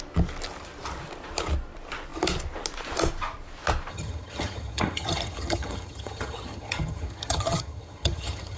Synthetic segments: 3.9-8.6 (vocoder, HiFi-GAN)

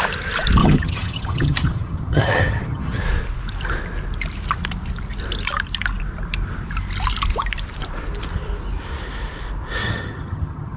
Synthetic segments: 0.6-3.0 (vocoder, HiFi-GAN); 9.8-10.8